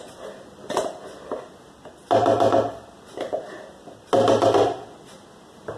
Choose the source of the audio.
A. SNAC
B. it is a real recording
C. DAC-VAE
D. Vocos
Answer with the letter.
B